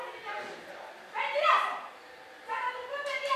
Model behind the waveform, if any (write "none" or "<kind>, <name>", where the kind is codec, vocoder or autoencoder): none